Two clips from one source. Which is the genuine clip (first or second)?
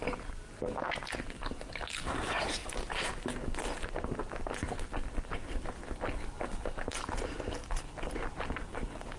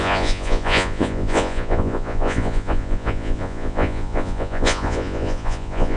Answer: first